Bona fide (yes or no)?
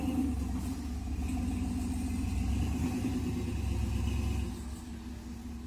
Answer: yes